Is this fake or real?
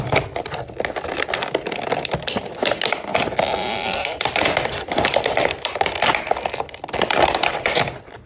fake